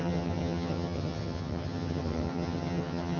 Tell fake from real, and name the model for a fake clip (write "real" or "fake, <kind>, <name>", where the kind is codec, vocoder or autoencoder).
fake, vocoder, HiFi-GAN